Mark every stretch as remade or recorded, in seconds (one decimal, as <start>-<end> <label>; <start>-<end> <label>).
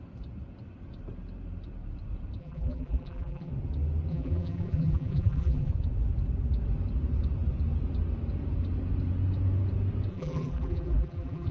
0.0-2.4 recorded; 2.4-3.5 remade; 3.5-4.1 recorded; 4.1-5.7 remade; 5.7-10.1 recorded; 10.1-11.5 remade